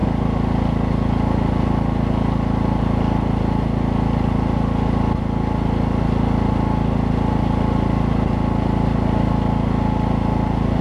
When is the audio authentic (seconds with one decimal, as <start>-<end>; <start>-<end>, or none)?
0.0-10.8